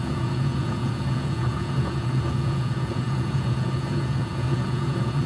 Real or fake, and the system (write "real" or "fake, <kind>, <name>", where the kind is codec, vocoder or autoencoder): fake, vocoder, Vocos